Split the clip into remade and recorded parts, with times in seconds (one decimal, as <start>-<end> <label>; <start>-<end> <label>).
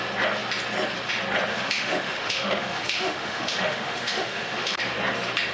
0.0-1.5 recorded; 1.5-4.8 remade; 4.8-5.5 recorded